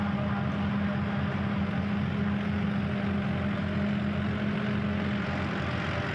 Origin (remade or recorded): recorded